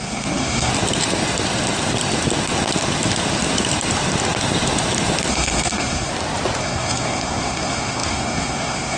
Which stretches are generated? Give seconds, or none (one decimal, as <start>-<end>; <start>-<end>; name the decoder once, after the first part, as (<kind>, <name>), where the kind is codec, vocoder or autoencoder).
0.0-0.7 (codec, SNAC); 5.3-6.1; 6.6-9.0